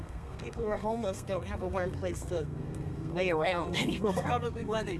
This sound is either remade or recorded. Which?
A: remade